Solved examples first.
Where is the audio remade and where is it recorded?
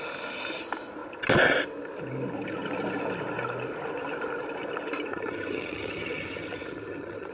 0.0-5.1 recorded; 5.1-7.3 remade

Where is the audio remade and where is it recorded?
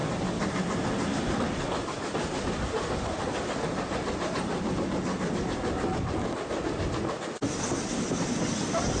0.0-9.0 recorded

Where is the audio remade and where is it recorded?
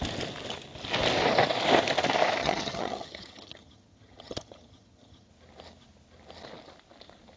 0.0-2.4 recorded; 2.4-5.3 remade; 5.3-7.4 recorded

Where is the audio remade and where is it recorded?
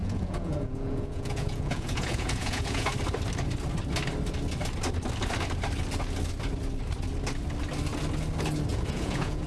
0.0-2.9 remade; 2.9-8.7 recorded; 8.7-9.5 remade